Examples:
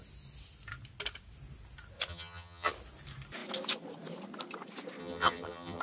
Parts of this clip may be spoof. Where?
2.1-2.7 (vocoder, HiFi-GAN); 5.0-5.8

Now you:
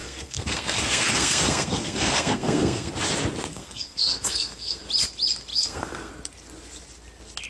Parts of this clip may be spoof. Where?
0.0-2.9 (codec, SNAC); 3.5-4.8; 5.5-6.1

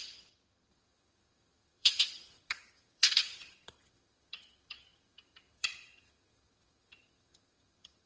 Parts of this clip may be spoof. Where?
0.0-8.1 (vocoder, HiFi-GAN)